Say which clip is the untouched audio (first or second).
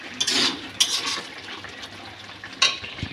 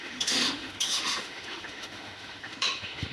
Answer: first